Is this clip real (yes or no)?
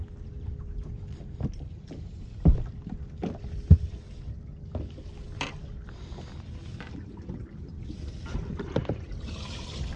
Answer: yes